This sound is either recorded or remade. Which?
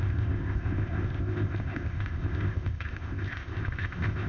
remade